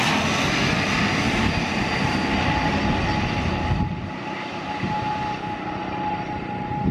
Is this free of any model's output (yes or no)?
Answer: yes